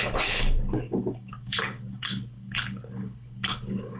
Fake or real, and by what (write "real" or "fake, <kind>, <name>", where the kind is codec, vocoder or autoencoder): fake, codec, HILCodec